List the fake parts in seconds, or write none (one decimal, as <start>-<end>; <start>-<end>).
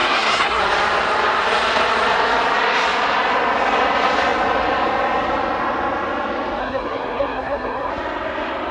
0.0-0.6; 6.6-7.9